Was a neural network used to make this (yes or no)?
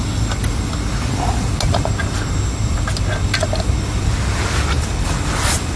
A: no